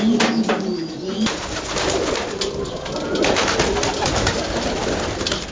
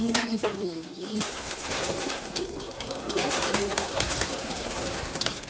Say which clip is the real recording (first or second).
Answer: first